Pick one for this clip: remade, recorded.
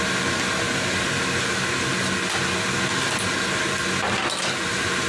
recorded